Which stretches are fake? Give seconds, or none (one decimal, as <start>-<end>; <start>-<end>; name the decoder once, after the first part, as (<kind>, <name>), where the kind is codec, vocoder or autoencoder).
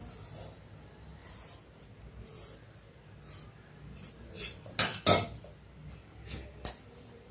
none